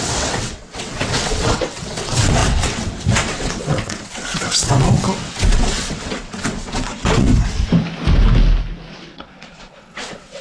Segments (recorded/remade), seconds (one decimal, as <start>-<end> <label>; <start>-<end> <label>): 0.0-7.3 remade; 7.3-8.9 recorded; 8.9-10.4 remade